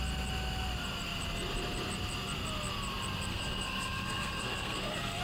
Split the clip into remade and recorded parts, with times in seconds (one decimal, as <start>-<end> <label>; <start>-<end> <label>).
0.0-3.3 recorded; 3.3-5.2 remade